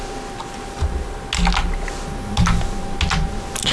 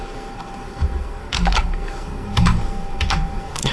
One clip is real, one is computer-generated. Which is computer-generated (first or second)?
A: second